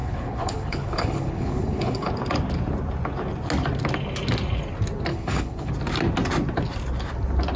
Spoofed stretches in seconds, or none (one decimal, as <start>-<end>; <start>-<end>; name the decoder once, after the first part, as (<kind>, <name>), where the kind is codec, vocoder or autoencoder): 0.0-2.1 (codec, HILCodec); 5.1-5.7